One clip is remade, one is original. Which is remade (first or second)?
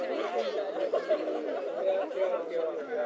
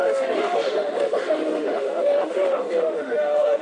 second